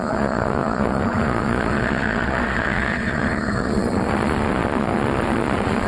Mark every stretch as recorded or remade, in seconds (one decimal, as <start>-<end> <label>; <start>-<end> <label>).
0.0-5.9 remade